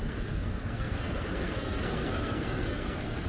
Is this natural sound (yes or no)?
no